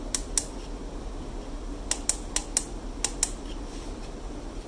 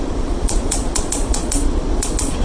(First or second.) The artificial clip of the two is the second